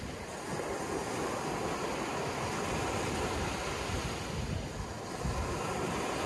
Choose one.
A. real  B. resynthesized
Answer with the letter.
A